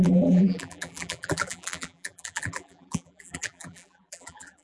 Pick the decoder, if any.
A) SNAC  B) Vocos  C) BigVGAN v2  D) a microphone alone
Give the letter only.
C